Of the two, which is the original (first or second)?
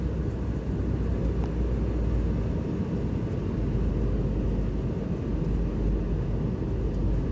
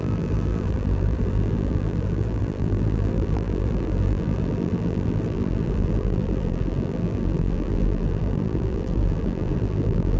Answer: first